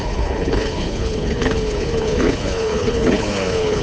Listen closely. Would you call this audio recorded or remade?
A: remade